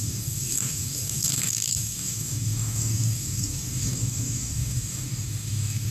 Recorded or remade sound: remade